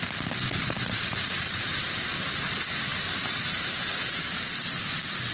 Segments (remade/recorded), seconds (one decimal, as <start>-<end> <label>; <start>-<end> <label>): 0.0-2.9 recorded; 2.9-3.6 remade; 3.6-5.3 recorded